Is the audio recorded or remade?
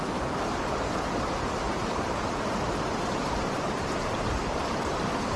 remade